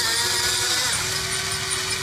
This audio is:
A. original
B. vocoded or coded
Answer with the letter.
A